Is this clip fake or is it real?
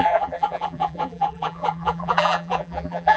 fake